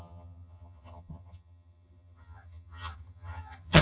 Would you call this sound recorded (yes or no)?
no